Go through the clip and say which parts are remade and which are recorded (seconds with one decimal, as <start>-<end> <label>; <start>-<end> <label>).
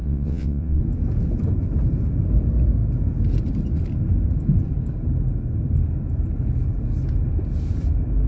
0.0-0.8 remade; 0.8-8.3 recorded